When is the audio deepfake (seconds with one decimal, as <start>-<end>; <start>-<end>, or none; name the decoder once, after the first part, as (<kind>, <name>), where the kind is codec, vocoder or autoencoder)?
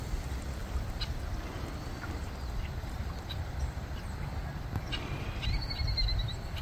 none